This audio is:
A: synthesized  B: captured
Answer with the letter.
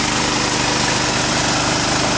A